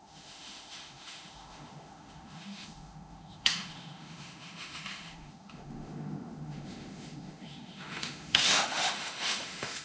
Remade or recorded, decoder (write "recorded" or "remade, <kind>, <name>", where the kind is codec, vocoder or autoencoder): remade, autoencoder, DAC-VAE